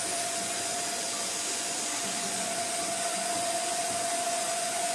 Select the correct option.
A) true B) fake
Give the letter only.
B